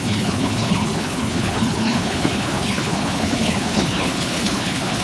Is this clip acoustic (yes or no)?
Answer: no